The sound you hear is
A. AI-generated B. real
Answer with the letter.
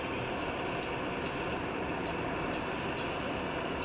B